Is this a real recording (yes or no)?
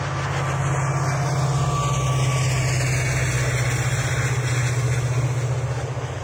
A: yes